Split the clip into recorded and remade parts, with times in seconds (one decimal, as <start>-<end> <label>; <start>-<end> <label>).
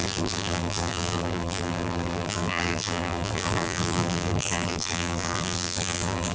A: 0.0-6.3 remade